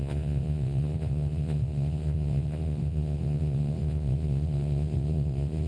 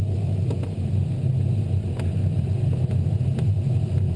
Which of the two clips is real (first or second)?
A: second